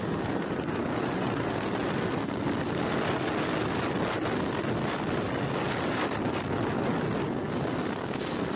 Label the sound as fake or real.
real